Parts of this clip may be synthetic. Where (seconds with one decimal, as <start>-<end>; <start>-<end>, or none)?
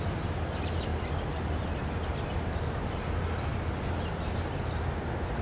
none